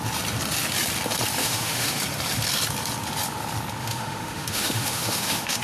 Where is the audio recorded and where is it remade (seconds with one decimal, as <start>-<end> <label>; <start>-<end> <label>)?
0.0-1.4 recorded; 1.4-2.0 remade; 2.0-3.8 recorded; 3.8-5.6 remade